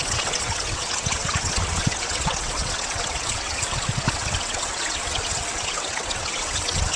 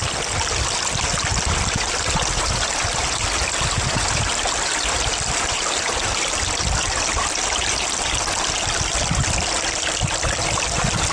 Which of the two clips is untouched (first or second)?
second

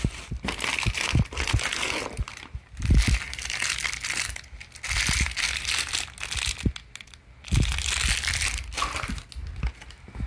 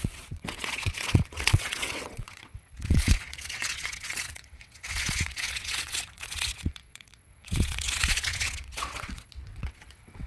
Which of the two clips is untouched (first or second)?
first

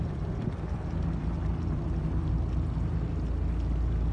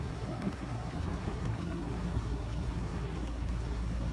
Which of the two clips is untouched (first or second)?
first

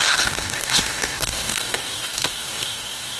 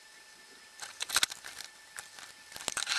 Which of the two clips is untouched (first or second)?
second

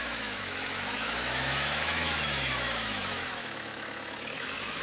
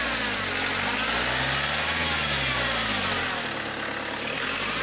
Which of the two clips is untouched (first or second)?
second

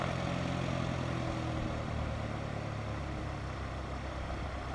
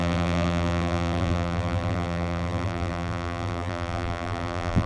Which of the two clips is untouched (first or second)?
first